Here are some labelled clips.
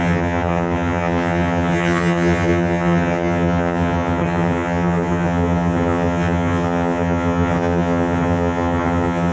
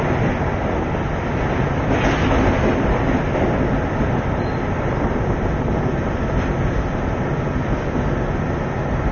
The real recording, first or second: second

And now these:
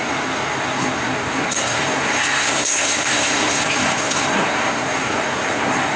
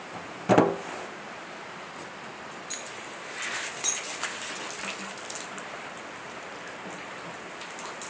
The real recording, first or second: second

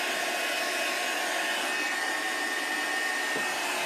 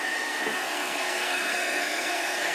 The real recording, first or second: first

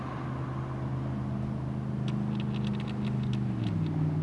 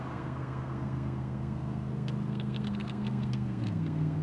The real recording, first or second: first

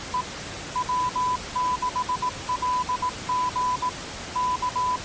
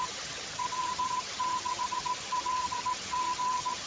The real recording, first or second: first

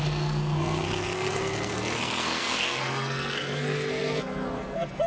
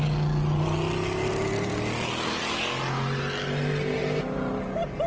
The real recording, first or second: second